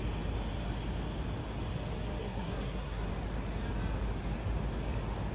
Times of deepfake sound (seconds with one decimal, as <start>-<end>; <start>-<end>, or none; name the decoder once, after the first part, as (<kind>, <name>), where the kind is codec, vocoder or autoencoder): 2.2-3.1 (codec, SNAC)